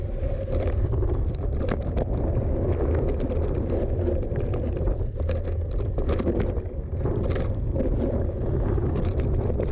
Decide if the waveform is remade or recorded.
remade